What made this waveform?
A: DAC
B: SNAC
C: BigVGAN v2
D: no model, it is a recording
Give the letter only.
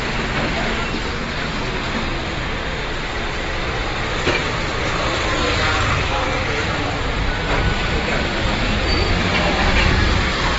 D